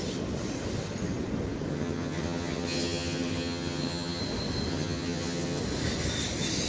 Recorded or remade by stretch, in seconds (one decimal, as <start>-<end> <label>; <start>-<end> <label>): 0.0-1.7 recorded; 1.7-4.2 remade; 4.2-4.7 recorded; 4.7-5.6 remade; 5.6-6.7 recorded